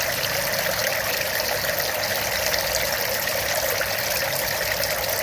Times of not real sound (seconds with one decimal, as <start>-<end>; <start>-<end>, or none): none